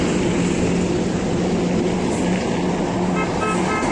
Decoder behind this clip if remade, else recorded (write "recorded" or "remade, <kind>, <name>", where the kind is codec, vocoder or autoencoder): recorded